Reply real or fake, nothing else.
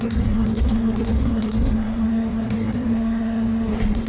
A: fake